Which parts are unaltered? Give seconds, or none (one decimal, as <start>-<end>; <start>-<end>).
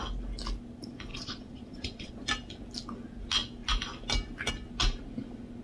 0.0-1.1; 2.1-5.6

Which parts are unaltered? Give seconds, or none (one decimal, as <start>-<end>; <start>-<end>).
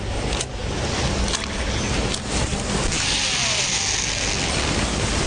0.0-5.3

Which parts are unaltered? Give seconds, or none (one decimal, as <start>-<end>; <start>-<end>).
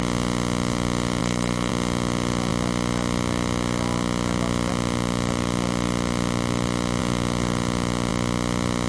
0.0-1.2; 1.7-8.9